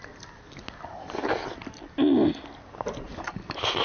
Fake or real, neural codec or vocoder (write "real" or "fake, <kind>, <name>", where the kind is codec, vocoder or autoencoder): real